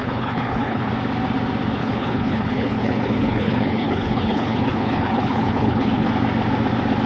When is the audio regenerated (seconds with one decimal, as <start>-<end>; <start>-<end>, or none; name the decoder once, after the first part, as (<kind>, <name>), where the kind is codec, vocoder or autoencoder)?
0.0-0.9 (codec, HILCodec); 1.8-6.1